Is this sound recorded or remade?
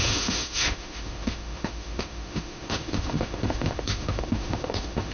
remade